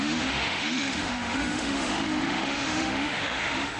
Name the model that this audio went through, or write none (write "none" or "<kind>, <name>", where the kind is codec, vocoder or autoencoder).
autoencoder, DAC-VAE